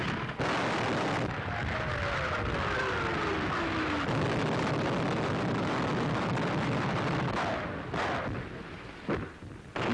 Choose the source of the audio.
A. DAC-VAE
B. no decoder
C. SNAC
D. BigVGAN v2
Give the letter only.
B